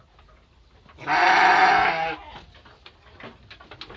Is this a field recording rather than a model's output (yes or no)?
yes